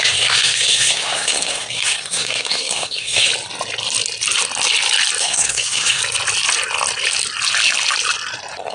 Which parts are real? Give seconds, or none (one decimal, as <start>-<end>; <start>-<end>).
3.3-5.2; 6.0-8.7